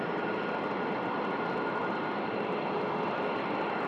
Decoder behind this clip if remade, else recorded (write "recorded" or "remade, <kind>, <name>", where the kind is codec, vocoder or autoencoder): recorded